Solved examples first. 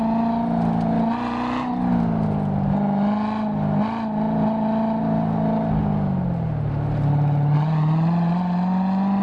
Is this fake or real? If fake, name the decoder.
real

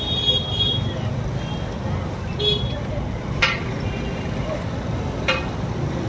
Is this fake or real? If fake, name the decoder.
real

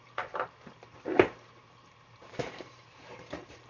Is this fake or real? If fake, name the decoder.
fake, vocoder, BigVGAN v2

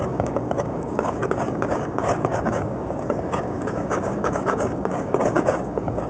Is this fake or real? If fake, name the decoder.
fake, codec, DAC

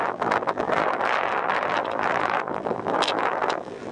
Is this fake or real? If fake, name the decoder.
fake, vocoder, BigVGAN v2